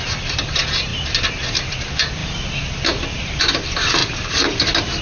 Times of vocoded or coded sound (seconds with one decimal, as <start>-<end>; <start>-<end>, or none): none